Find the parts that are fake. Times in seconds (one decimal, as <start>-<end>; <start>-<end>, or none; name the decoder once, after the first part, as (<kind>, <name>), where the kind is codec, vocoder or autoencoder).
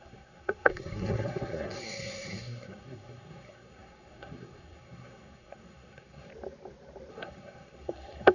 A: 0.0-6.3 (codec, SNAC); 7.1-8.3